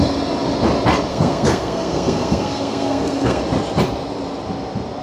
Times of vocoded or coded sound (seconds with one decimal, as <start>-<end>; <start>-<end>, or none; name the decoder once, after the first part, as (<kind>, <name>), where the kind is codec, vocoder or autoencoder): 1.1-3.4 (codec, SNAC)